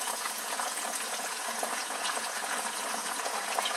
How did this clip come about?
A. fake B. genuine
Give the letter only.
A